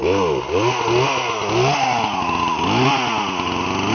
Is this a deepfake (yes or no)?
no